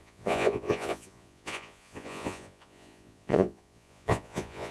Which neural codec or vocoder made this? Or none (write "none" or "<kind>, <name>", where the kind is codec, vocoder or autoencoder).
vocoder, Vocos